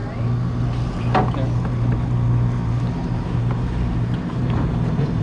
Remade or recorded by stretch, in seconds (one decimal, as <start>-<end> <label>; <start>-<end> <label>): 0.0-3.0 recorded; 3.0-5.2 remade